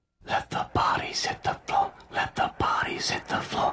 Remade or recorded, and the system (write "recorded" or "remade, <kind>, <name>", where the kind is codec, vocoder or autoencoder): recorded